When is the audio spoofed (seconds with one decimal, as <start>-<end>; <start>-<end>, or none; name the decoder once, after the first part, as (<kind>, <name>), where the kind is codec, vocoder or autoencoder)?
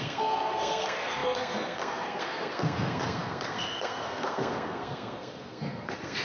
0.0-6.2 (codec, SNAC)